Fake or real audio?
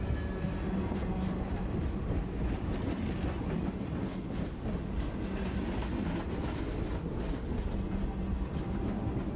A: real